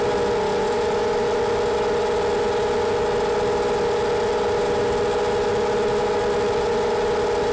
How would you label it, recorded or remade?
recorded